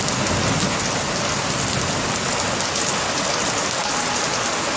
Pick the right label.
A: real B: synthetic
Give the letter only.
A